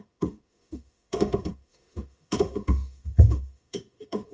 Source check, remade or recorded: remade